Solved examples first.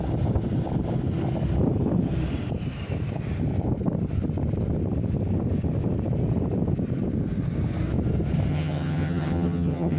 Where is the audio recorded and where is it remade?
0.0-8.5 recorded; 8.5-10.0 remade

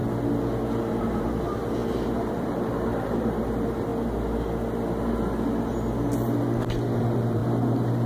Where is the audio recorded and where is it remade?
0.0-1.0 recorded; 1.0-3.9 remade; 3.9-7.0 recorded; 7.0-7.4 remade; 7.4-8.1 recorded

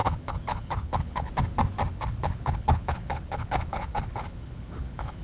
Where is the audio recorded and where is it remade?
0.0-1.3 remade; 1.3-1.9 recorded; 1.9-5.2 remade

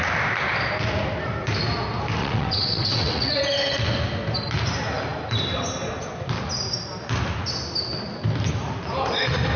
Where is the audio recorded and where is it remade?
0.0-2.2 recorded; 2.2-3.3 remade; 3.3-9.6 recorded